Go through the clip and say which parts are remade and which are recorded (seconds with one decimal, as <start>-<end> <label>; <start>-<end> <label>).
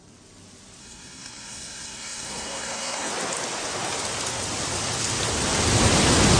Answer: 0.0-0.8 recorded; 0.8-3.1 remade; 3.1-6.4 recorded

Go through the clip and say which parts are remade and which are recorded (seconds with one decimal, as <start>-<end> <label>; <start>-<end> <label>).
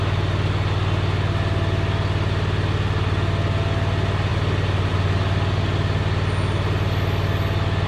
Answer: 0.0-7.9 recorded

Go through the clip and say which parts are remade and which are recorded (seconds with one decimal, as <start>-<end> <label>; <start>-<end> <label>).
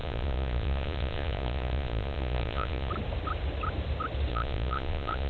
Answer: 0.0-2.9 remade; 2.9-4.3 recorded; 4.3-5.3 remade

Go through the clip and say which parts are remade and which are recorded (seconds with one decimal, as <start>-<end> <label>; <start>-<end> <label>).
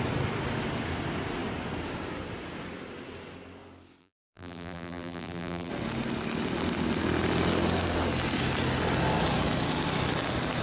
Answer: 0.0-4.0 recorded; 4.0-5.7 remade; 5.7-10.6 recorded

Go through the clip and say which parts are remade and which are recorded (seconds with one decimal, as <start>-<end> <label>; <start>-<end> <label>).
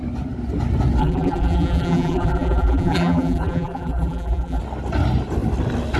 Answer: 0.0-1.0 recorded; 1.0-4.6 remade; 4.6-6.0 recorded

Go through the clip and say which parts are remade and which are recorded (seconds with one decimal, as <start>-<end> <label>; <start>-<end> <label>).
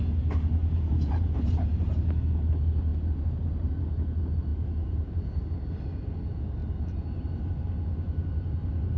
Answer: 0.0-0.6 recorded; 0.6-1.9 remade; 1.9-4.5 recorded; 4.5-5.5 remade; 5.5-9.0 recorded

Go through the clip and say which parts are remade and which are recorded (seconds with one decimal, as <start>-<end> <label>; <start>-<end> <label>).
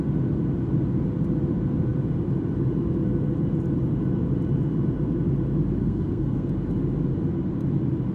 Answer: 0.0-5.8 recorded; 5.8-6.5 remade; 6.5-8.1 recorded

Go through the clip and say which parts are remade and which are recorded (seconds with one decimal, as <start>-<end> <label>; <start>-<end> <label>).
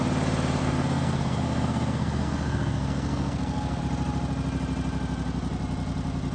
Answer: 0.0-0.6 recorded; 0.6-3.8 remade; 3.8-6.3 recorded